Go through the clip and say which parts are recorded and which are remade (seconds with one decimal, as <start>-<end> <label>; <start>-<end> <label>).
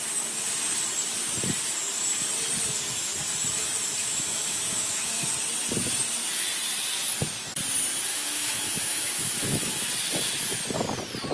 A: 0.0-4.0 recorded; 4.0-5.3 remade; 5.3-8.1 recorded; 8.1-9.9 remade; 9.9-11.3 recorded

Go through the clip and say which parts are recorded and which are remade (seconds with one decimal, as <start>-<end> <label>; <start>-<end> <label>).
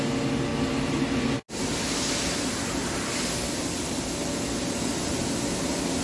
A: 0.0-6.0 recorded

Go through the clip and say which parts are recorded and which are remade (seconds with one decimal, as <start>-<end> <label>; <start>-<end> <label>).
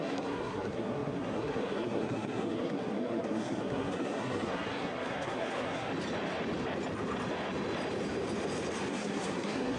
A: 0.0-5.9 remade; 5.9-8.9 recorded; 8.9-9.8 remade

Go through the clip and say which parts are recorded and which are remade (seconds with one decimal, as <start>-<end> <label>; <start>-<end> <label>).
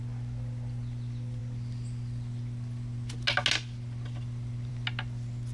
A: 0.0-5.5 recorded